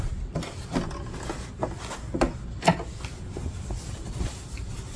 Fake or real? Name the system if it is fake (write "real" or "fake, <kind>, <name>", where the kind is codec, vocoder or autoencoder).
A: real